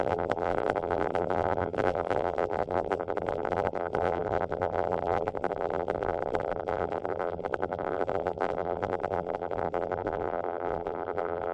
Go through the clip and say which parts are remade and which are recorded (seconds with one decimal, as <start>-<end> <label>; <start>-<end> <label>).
0.0-11.5 remade